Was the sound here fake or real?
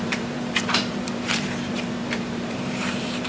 fake